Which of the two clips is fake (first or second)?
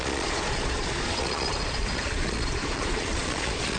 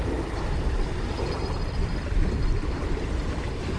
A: first